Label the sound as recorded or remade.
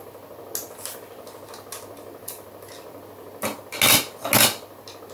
recorded